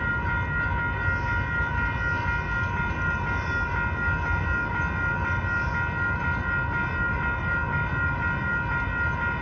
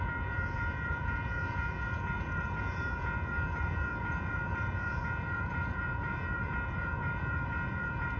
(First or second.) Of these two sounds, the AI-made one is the second